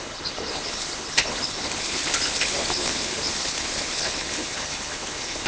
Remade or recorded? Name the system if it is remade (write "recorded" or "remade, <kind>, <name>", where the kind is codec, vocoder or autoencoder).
remade, codec, HILCodec